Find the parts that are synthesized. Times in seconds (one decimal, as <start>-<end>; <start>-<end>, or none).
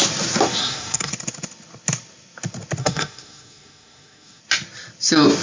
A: 0.6-1.1; 2.8-4.4